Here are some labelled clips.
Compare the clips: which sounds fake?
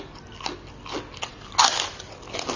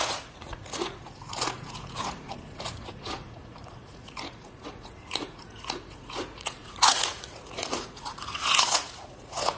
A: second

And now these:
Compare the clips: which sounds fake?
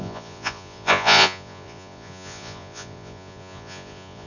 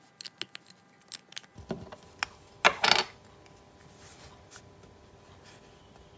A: first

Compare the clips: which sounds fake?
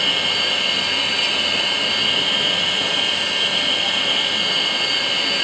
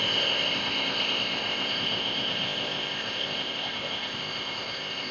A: second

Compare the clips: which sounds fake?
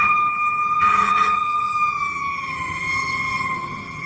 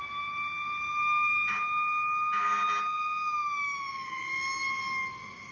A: first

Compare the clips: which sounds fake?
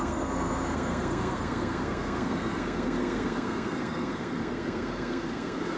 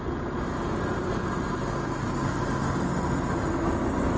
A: first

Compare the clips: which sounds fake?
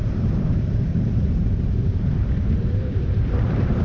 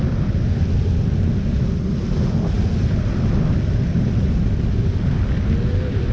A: first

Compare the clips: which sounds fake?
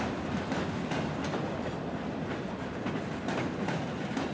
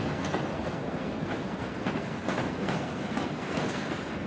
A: second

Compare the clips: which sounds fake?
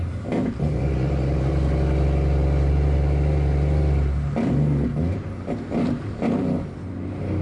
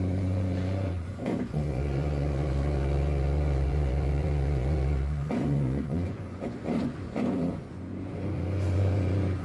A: second